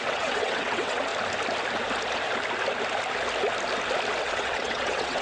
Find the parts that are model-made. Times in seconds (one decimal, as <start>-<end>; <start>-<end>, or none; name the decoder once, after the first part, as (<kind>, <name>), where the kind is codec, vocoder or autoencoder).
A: 0.0-1.1 (vocoder, WaveNeXt); 4.2-5.2